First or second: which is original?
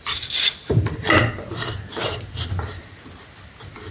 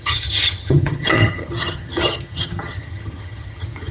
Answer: first